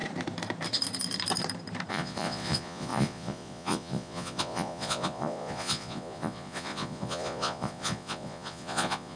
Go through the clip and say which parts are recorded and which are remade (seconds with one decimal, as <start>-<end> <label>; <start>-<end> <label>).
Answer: 0.0-1.9 recorded; 1.9-9.2 remade